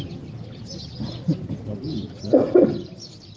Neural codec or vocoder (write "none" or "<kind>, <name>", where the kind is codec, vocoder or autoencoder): none